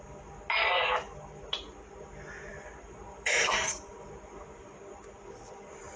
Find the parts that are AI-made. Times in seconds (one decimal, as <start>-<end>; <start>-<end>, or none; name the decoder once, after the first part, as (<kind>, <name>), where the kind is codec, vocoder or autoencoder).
2.5-4.8 (vocoder, BigVGAN v2)